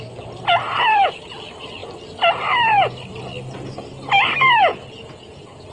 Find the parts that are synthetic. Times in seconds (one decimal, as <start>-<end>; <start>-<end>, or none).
4.7-5.7